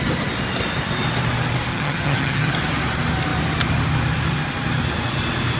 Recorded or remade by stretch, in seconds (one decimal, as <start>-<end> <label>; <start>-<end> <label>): 0.0-1.7 recorded; 1.7-2.5 remade; 2.5-5.6 recorded